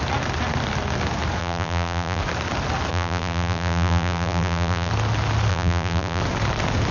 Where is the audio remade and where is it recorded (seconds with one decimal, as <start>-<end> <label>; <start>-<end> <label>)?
0.0-1.4 recorded; 1.4-2.2 remade; 2.2-2.9 recorded; 2.9-4.9 remade; 4.9-5.5 recorded; 5.5-6.2 remade; 6.2-6.9 recorded